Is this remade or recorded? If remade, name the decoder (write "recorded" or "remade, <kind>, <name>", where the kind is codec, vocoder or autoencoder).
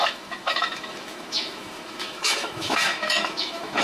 remade, autoencoder, DAC-VAE